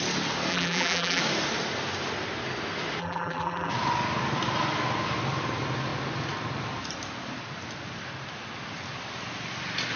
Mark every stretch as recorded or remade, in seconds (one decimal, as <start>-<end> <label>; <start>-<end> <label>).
0.0-0.5 recorded; 0.5-1.2 remade; 1.2-3.0 recorded; 3.0-3.7 remade; 3.7-10.0 recorded